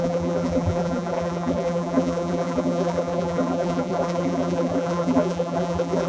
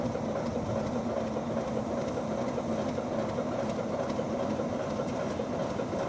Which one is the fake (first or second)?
first